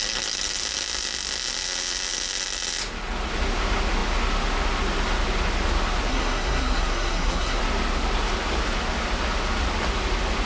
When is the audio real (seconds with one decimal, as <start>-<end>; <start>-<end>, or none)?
0.0-6.1; 7.6-10.5